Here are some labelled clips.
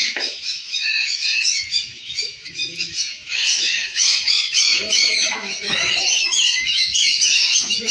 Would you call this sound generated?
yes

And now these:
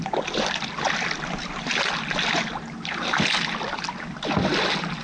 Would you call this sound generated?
no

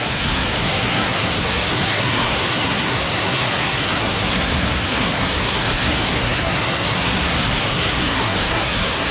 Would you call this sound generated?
yes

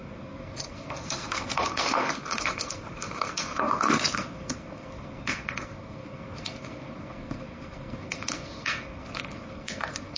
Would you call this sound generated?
yes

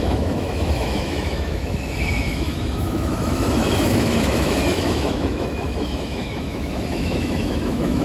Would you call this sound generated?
yes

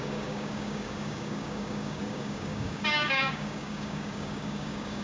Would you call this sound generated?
yes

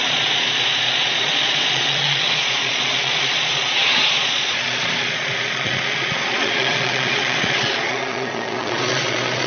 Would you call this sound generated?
yes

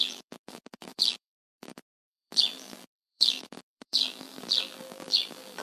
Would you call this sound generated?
yes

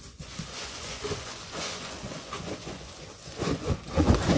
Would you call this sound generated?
yes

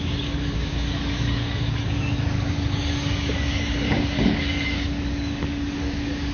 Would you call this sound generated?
yes